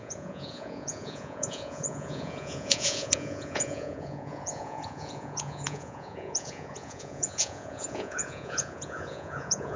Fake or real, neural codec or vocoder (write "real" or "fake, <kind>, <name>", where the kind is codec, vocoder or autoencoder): fake, vocoder, Vocos